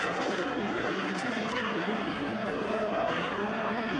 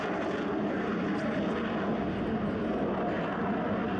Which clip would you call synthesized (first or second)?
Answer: first